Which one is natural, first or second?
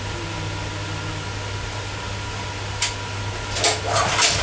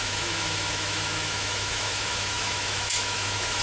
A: first